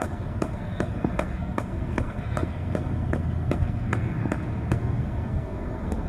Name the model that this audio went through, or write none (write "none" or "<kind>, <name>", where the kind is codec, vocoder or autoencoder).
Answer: codec, SNAC